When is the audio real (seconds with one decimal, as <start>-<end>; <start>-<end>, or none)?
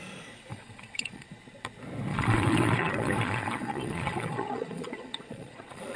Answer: 0.0-0.5; 1.3-2.1